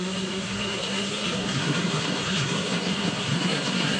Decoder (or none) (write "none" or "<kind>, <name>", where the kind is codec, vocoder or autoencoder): codec, SNAC